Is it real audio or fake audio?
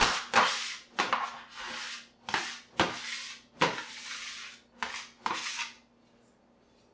real